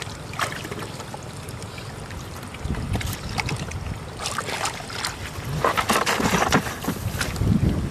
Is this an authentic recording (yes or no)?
yes